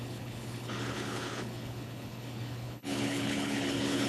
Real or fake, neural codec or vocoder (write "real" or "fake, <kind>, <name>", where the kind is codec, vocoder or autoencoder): fake, codec, HILCodec